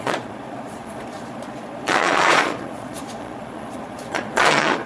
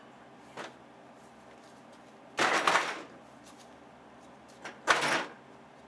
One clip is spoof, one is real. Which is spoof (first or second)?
first